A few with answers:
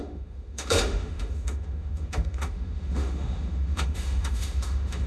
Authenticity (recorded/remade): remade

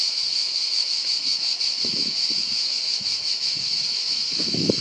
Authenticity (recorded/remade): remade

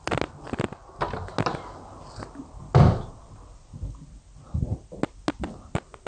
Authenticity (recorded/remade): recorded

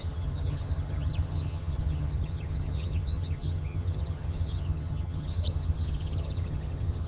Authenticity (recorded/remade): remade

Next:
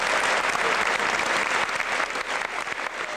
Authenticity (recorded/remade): recorded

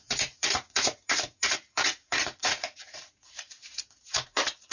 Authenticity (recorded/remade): remade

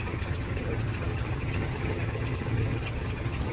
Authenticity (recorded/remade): remade